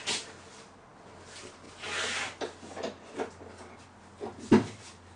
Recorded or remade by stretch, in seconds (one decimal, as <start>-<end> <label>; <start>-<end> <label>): 0.0-5.2 recorded